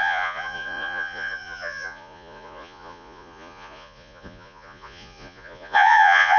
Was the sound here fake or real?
fake